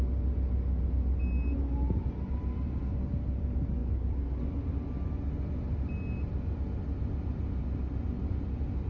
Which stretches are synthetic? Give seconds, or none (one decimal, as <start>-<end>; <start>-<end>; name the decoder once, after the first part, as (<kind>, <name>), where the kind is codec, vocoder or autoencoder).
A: none